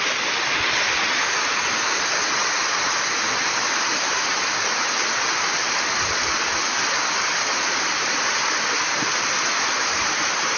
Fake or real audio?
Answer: real